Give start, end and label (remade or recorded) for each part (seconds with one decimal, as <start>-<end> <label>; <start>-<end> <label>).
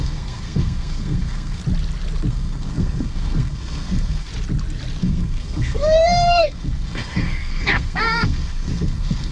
0.0-1.6 remade; 1.6-2.3 recorded; 2.3-4.3 remade; 4.3-5.0 recorded; 5.0-9.3 remade